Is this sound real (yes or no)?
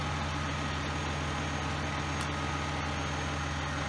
yes